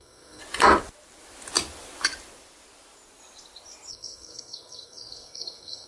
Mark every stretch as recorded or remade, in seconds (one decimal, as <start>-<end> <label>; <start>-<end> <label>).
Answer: 0.0-0.4 remade; 0.4-3.9 recorded; 3.9-5.9 remade

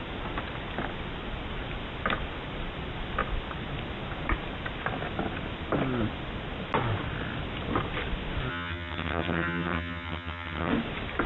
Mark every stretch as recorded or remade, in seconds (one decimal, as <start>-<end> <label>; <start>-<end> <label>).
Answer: 0.0-8.5 recorded; 8.5-10.7 remade; 10.7-11.3 recorded